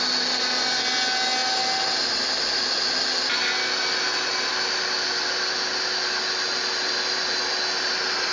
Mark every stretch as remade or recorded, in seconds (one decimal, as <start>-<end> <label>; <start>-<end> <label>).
0.0-8.3 recorded